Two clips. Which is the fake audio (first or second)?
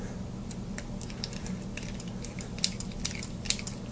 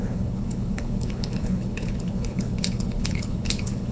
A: second